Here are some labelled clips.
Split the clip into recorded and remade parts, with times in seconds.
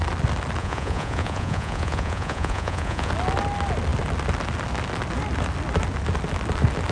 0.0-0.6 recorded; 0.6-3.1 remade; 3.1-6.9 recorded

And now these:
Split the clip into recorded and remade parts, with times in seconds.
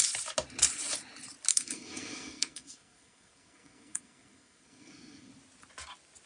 0.0-1.5 recorded; 1.5-5.3 remade; 5.3-6.3 recorded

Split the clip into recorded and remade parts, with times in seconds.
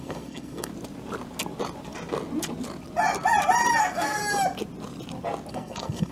0.0-0.7 remade; 0.7-3.8 recorded; 3.8-4.2 remade; 4.2-5.5 recorded; 5.5-6.1 remade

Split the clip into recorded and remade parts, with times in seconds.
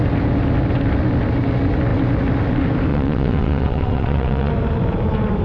0.0-2.9 recorded; 2.9-4.5 remade; 4.5-5.4 recorded